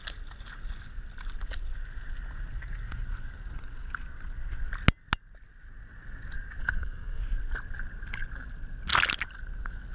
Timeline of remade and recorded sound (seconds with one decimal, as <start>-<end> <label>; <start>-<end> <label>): 0.0-6.6 recorded; 6.6-7.2 remade; 7.2-9.9 recorded